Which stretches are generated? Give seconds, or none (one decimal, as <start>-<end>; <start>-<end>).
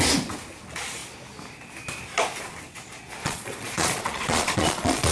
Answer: 3.2-5.1